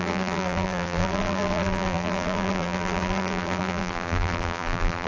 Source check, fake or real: fake